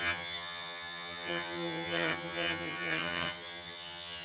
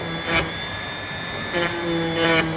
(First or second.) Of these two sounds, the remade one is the first